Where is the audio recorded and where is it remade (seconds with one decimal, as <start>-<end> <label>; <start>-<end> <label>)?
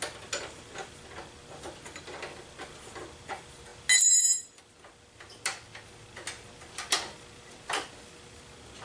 0.0-8.8 recorded